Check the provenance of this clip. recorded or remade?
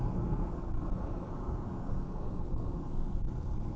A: remade